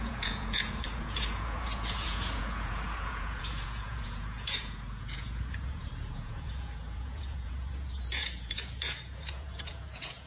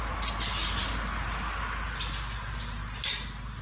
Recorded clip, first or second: second